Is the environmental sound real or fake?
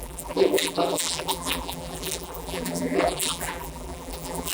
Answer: fake